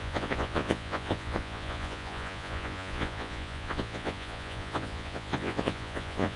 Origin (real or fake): fake